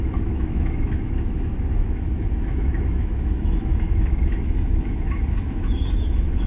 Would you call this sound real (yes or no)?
no